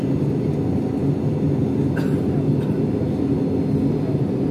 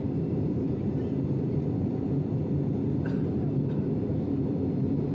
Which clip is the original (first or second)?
first